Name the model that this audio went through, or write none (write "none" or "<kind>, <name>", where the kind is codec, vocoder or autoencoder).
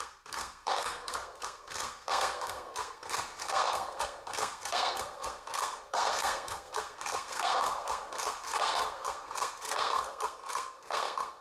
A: codec, SNAC